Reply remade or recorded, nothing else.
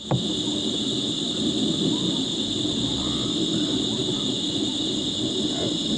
recorded